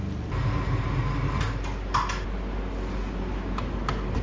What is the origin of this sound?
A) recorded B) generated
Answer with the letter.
A